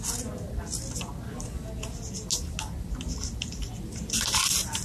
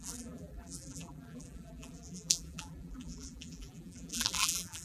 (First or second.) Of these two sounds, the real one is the first